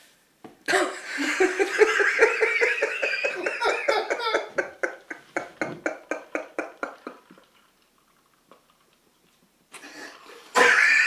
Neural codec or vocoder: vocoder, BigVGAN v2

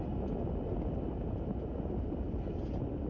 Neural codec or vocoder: none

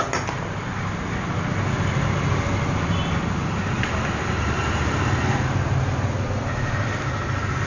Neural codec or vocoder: none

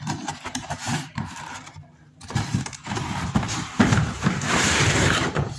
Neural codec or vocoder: vocoder, BigVGAN v2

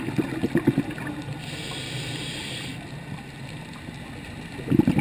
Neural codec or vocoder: vocoder, BigVGAN v2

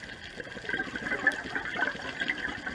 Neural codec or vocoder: none